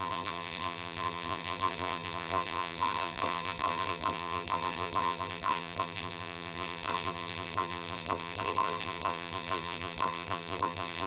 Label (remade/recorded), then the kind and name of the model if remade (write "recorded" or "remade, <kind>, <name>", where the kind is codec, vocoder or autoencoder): remade, vocoder, BigVGAN v2